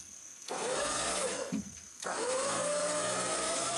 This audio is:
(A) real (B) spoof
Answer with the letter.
B